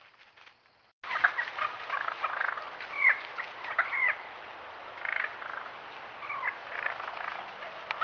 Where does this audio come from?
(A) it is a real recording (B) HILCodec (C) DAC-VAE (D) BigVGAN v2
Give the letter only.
A